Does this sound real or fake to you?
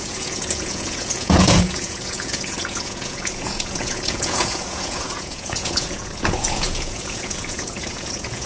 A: fake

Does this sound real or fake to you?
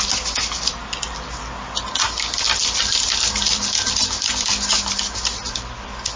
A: fake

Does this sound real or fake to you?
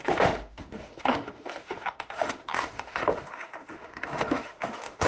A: fake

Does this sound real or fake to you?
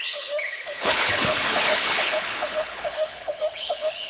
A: fake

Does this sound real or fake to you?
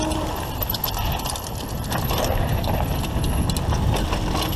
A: real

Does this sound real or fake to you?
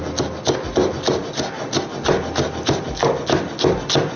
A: real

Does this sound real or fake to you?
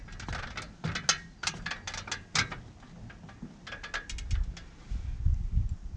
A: real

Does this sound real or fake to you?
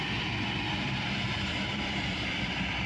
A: fake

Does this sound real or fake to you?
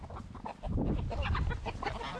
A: real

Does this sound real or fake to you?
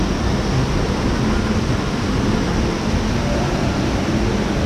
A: real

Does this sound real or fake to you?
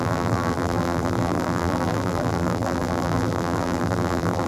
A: fake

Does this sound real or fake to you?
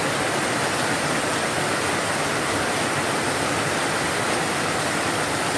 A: real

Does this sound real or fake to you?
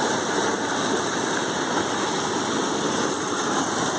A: fake